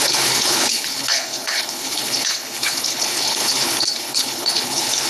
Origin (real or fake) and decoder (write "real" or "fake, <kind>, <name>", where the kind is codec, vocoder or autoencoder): fake, codec, HILCodec